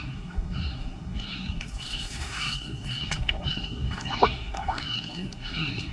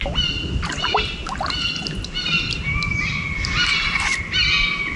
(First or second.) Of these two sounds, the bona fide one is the second